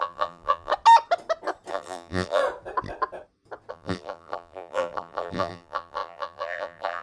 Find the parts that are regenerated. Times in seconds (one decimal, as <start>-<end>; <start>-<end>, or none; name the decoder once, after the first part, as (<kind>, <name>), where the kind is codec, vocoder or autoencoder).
0.0-0.7 (vocoder, BigVGAN v2); 1.7-2.4; 3.7-7.0